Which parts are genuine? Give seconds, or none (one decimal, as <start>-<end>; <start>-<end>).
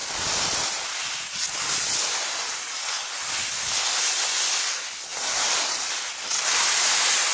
0.0-5.1; 5.6-7.3